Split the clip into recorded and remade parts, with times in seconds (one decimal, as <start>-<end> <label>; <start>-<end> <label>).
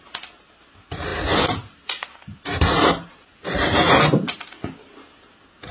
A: 0.0-5.7 recorded